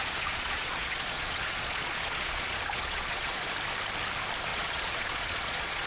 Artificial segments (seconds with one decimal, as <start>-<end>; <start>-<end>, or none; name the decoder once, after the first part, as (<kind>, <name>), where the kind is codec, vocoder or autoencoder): 0.0-3.5 (vocoder, Vocos); 4.5-5.9